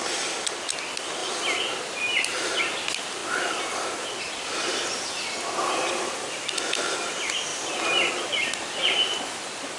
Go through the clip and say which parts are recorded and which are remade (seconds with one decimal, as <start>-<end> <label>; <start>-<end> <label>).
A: 0.0-1.2 recorded; 1.2-2.6 remade; 2.6-9.8 recorded